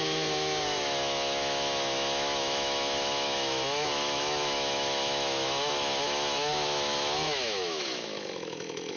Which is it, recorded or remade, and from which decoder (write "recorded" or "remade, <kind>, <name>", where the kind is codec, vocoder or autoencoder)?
remade, autoencoder, DAC-VAE